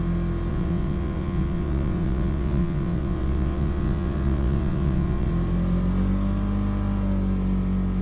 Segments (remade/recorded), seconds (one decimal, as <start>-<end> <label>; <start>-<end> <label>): 0.0-0.5 recorded; 0.5-5.3 remade; 5.3-8.0 recorded